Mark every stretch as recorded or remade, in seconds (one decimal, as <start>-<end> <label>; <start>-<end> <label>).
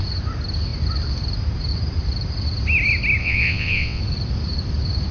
0.0-3.2 recorded; 3.2-4.0 remade; 4.0-5.1 recorded